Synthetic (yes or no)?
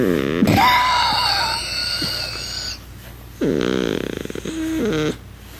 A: no